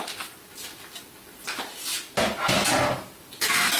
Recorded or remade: recorded